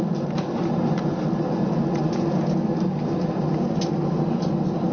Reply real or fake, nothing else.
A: real